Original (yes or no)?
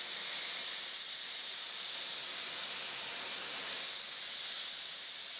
yes